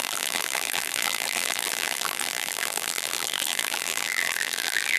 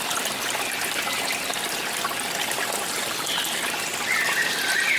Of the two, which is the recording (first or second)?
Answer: second